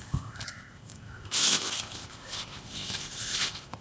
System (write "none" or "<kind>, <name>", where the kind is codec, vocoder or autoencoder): codec, ZipCodec